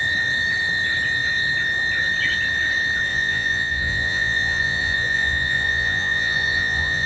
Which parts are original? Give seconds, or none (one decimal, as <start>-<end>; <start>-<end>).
0.0-3.1